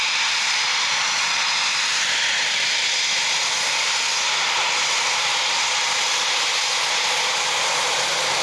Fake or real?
real